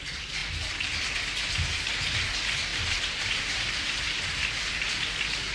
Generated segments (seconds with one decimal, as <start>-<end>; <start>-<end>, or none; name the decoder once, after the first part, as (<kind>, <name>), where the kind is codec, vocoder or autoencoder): 2.7-4.3 (vocoder, BigVGAN v2)